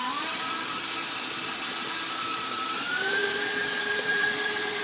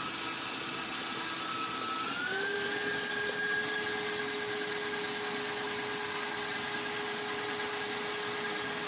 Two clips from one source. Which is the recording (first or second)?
second